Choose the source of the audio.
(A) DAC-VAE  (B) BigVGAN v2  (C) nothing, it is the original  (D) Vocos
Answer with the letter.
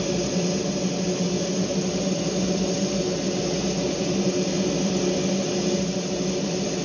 C